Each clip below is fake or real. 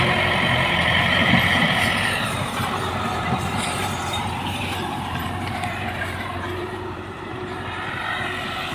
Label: fake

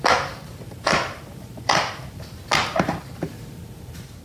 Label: fake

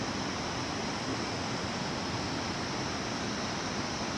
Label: fake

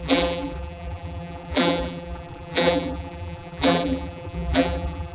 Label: fake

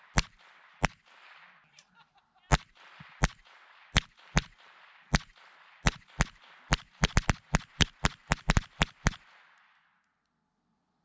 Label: real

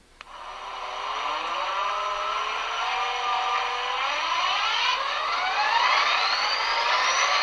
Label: real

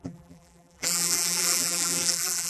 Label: fake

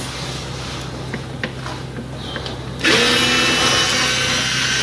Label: real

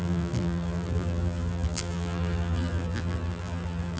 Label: fake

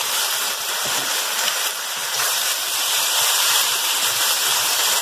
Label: fake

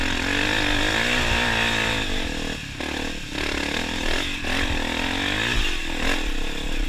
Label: real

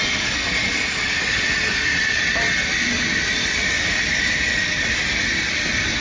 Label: fake